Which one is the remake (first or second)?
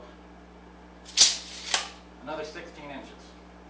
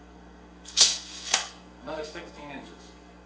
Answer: second